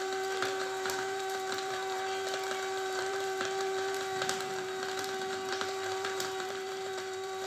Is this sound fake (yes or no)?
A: yes